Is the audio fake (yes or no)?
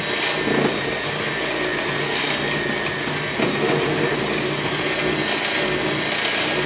no